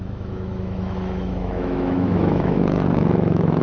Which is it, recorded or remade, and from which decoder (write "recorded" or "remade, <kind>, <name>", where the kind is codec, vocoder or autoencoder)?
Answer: remade, autoencoder, DAC-VAE